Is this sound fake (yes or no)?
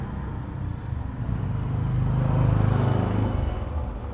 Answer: no